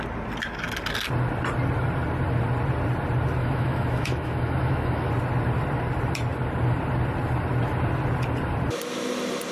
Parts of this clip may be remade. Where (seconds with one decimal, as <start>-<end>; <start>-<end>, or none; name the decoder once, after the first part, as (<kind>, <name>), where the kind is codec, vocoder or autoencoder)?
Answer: 3.4-5.1 (autoencoder, DAC-VAE)